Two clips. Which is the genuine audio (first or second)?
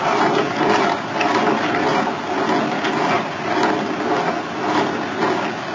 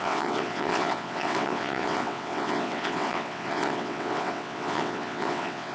first